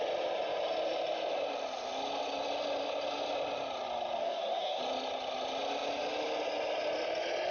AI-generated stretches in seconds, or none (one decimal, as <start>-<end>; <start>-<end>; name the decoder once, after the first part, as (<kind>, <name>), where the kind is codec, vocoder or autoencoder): 4.2-4.8 (codec, DAC)